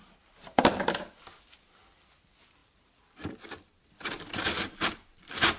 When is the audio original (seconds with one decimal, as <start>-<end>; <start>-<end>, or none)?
2.0-2.6; 3.4-5.6